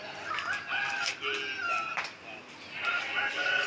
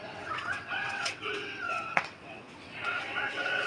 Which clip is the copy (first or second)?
second